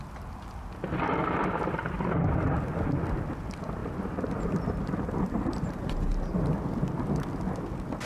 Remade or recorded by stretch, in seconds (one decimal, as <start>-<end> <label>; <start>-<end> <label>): 0.0-8.1 recorded